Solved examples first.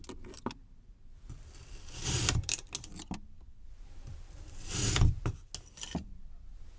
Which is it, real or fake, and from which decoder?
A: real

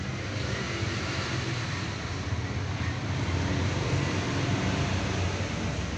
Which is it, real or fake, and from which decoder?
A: real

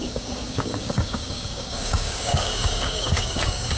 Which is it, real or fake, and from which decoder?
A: fake, codec, DAC